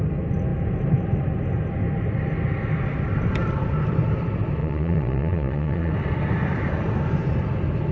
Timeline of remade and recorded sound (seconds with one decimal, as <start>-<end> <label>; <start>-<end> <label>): 0.0-4.6 recorded; 4.6-5.9 remade; 5.9-7.9 recorded